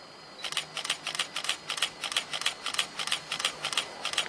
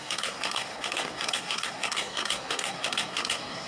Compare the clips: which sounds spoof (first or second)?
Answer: second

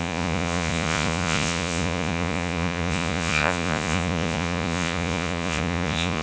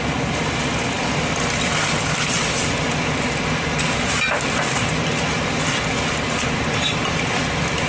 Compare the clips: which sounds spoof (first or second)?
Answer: first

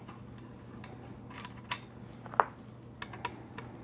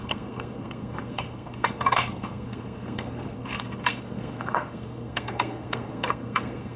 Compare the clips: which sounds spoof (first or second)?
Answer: second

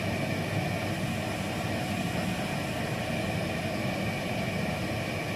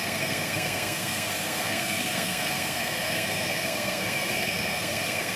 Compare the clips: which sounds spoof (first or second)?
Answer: second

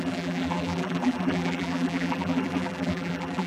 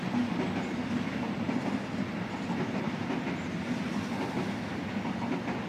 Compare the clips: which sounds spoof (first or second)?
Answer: first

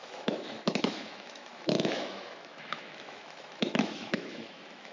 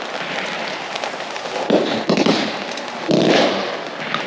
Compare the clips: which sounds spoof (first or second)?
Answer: first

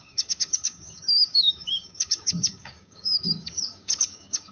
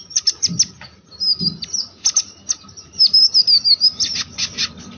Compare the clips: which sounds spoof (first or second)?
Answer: first